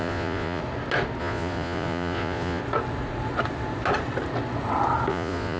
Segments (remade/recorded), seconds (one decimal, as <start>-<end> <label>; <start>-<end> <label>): 0.0-0.6 remade; 0.6-1.2 recorded; 1.2-2.6 remade; 2.6-5.1 recorded; 5.1-5.6 remade